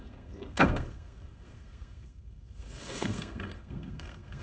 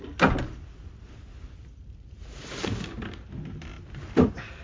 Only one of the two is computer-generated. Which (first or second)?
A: first